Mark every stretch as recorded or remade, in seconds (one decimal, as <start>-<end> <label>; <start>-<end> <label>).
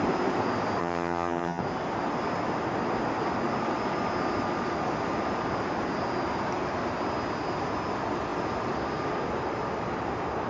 0.0-0.8 recorded; 0.8-1.6 remade; 1.6-10.5 recorded